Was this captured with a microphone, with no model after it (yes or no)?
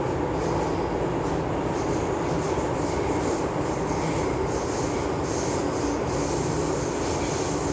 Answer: yes